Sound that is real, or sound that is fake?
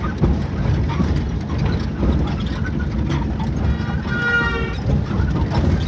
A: real